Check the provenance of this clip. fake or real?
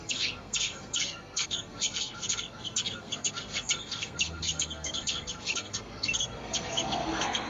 fake